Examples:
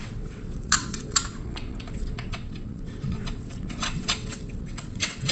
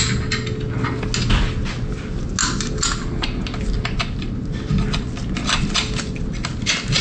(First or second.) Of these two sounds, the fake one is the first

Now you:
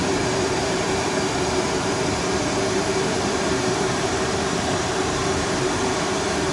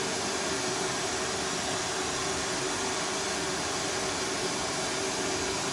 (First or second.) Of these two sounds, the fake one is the first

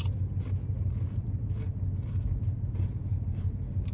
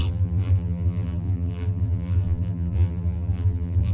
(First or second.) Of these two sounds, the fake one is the second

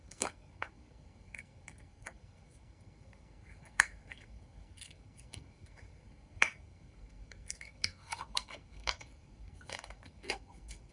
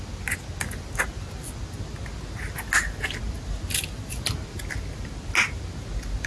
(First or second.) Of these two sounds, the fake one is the first